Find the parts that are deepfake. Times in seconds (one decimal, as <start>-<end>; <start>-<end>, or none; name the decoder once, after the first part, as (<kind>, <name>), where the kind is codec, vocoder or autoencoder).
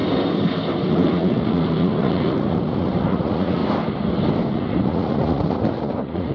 0.9-3.6 (vocoder, Vocos); 4.5-6.3